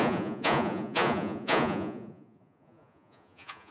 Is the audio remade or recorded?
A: remade